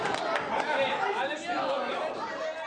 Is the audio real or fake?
real